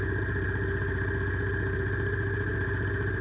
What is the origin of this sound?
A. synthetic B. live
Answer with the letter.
B